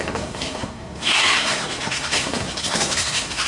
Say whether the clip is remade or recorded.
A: remade